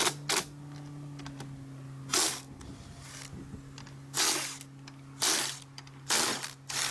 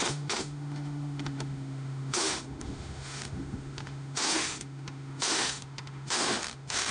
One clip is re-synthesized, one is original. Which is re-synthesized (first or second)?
second